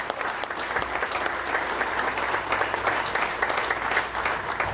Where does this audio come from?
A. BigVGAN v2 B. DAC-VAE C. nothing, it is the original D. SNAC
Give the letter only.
C